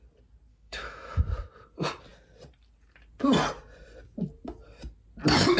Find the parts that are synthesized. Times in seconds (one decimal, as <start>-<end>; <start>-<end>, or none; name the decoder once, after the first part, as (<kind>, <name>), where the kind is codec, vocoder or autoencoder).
0.5-1.2 (autoencoder, DAC-VAE)